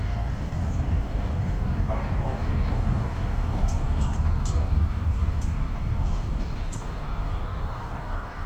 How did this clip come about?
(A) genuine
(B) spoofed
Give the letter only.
B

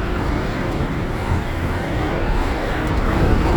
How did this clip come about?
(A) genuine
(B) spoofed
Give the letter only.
B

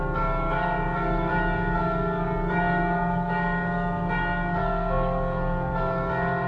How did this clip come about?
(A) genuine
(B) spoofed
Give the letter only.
B